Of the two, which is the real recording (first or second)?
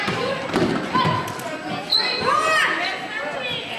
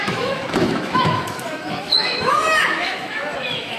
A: first